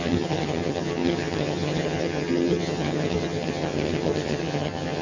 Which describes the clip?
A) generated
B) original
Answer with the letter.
A